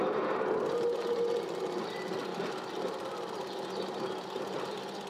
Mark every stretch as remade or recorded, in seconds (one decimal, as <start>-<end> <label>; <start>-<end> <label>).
0.0-5.1 recorded